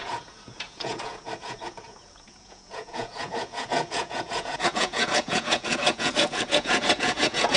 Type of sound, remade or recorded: remade